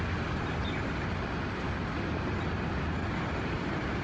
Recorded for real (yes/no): yes